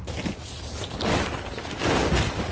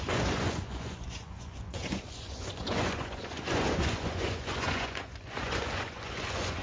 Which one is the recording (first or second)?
first